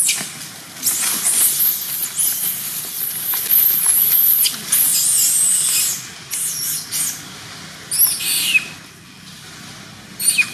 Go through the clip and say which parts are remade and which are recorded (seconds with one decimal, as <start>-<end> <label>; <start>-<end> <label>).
0.0-10.5 recorded